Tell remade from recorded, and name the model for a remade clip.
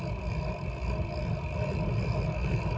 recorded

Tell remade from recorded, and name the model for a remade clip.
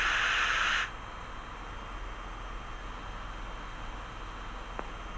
recorded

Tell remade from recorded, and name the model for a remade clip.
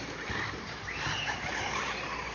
recorded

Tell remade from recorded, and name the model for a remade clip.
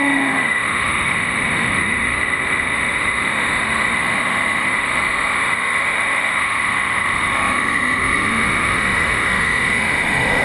remade, autoencoder, DAC-VAE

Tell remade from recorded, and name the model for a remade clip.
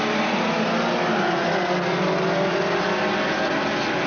recorded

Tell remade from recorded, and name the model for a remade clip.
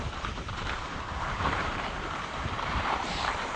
remade, vocoder, BigVGAN v2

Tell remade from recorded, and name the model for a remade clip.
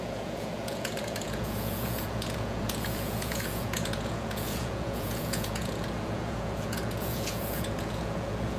remade, vocoder, Vocos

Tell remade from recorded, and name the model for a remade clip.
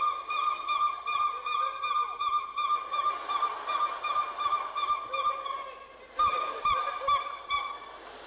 recorded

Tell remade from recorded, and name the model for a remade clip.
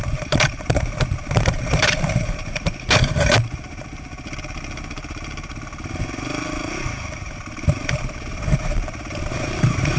remade, vocoder, BigVGAN v2